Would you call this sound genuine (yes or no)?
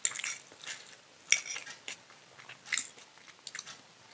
yes